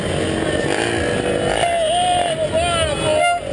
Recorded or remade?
recorded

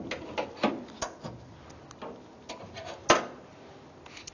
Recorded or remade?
recorded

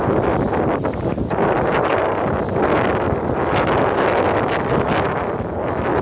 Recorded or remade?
recorded